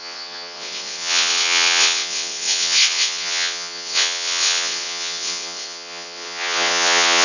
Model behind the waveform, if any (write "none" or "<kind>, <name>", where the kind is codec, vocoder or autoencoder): vocoder, WaveNeXt